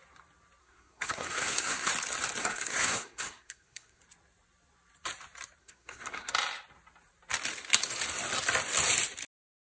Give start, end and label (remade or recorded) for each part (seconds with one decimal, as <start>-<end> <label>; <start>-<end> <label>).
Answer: 0.0-0.6 recorded; 0.6-1.9 remade; 1.9-2.4 recorded; 2.4-4.0 remade; 4.0-5.6 recorded; 5.6-6.3 remade; 6.3-9.6 recorded